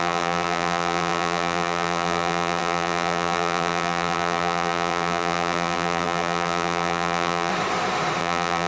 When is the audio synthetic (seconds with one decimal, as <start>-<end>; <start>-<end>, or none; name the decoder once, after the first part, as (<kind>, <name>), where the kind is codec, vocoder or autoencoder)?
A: 0.0-7.5 (vocoder, BigVGAN v2); 8.2-8.7